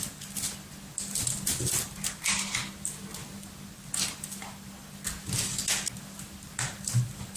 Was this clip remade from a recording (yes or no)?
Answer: no